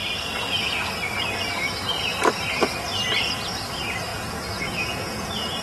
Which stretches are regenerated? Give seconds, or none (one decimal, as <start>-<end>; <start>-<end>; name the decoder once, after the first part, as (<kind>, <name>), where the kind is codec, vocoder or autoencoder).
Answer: 4.1-5.6 (vocoder, Vocos)